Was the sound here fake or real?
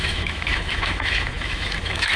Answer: fake